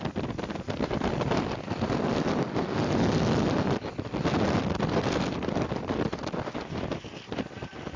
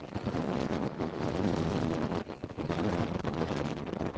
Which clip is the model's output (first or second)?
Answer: second